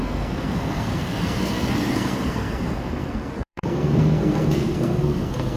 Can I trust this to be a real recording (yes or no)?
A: no